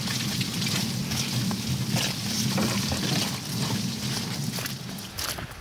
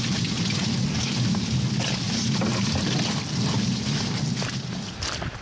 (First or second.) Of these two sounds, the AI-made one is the second